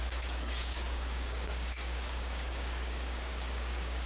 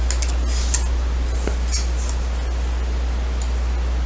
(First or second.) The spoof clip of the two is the first